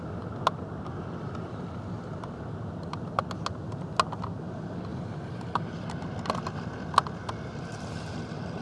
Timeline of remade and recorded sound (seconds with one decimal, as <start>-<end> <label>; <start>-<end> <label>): 0.0-4.9 recorded; 4.9-5.4 remade; 5.4-8.6 recorded